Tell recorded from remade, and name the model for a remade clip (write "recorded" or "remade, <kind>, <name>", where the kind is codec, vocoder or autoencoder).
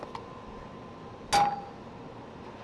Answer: recorded